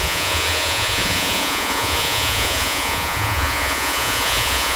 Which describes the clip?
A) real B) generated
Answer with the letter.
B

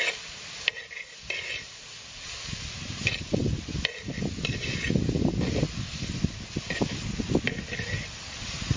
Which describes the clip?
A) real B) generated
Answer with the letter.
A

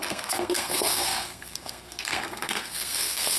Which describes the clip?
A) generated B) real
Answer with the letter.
A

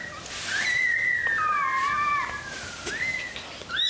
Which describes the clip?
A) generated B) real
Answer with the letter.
B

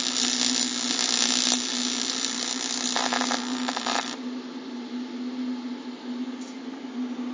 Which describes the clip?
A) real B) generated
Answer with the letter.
A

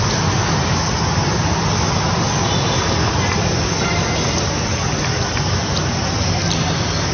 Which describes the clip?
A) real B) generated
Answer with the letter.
A